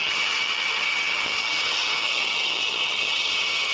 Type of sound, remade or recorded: remade